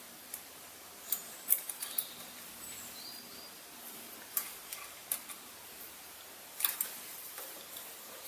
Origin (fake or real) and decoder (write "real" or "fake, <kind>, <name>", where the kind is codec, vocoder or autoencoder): fake, vocoder, BigVGAN v2